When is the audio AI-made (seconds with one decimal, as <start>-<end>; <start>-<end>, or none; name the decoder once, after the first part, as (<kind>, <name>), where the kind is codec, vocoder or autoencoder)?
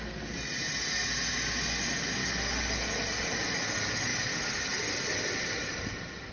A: none